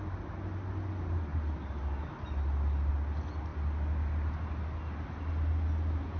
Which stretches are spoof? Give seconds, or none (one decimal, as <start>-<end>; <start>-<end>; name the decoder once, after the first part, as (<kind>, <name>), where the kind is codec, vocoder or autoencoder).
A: none